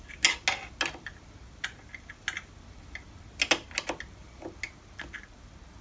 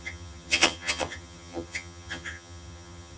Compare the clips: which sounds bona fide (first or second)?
first